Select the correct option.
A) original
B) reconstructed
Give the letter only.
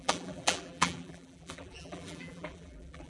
B